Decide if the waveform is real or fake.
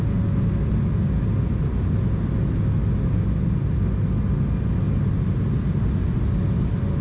real